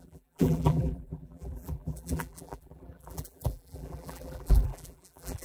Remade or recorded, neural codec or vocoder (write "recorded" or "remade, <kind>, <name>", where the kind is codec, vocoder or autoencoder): remade, vocoder, BigVGAN v2